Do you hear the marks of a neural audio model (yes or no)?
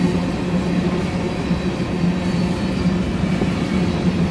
no